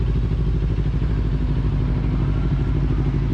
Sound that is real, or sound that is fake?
real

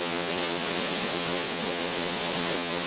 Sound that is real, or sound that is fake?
fake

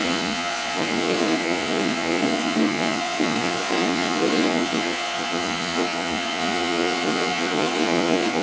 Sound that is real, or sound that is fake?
fake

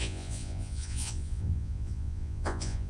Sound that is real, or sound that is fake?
fake